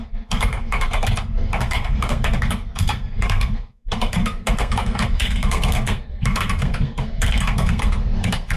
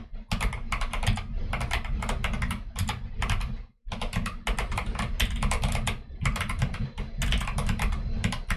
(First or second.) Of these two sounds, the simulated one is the first